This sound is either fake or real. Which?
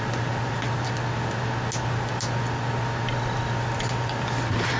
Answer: real